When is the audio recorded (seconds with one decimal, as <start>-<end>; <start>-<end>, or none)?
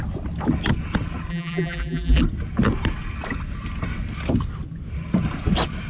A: 0.0-1.3; 2.2-5.9